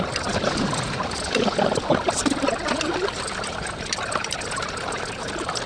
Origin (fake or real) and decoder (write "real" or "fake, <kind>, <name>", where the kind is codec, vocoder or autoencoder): real